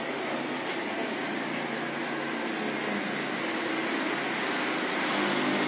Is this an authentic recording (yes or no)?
yes